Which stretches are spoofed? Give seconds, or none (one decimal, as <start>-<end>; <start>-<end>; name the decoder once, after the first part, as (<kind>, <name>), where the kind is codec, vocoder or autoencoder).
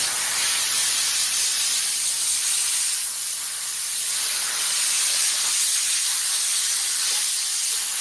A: none